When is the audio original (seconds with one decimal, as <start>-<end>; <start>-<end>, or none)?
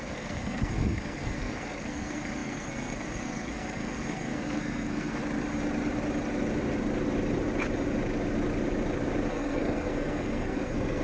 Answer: 5.2-9.3